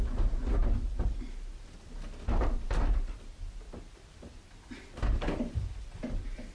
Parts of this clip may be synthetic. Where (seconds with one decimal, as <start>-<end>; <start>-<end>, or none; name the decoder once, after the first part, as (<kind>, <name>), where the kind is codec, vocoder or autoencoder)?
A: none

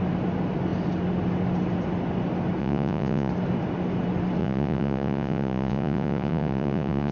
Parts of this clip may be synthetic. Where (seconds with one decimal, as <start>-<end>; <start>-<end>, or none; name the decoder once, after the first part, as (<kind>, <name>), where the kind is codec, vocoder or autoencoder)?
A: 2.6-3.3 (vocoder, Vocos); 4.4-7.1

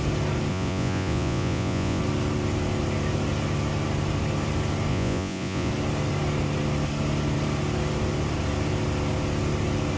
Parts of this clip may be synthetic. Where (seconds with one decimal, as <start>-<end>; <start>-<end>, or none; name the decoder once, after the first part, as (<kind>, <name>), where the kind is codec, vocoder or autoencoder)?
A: 0.5-2.0 (vocoder, Vocos); 4.9-5.7

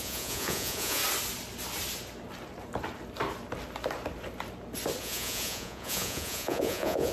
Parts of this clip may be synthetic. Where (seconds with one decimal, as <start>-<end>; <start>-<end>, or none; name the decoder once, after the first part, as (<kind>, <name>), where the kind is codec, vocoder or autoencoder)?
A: 0.0-1.0 (vocoder, Vocos); 5.0-7.1

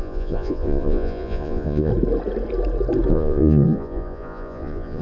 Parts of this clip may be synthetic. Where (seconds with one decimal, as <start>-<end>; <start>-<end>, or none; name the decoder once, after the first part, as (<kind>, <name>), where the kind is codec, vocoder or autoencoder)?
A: 0.0-1.9 (vocoder, Vocos); 3.1-5.0

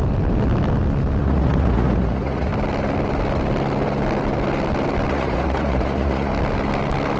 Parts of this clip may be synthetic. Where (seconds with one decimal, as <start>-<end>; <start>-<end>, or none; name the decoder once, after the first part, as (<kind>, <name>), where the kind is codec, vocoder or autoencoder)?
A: 1.2-2.5 (vocoder, Vocos); 5.1-6.3

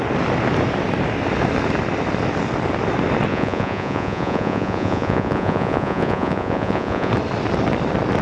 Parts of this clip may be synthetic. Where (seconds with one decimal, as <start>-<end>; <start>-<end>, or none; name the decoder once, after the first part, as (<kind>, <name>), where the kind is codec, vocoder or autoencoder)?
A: 3.3-7.1 (vocoder, Vocos)

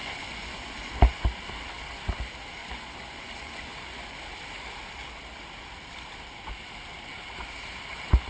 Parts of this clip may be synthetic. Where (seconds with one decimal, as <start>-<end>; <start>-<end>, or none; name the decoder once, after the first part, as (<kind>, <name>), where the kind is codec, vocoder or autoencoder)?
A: 0.0-0.9 (vocoder, Vocos); 2.6-4.2